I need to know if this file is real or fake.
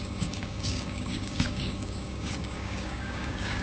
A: fake